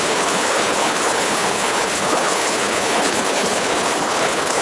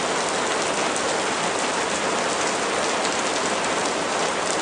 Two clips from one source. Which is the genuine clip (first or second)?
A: second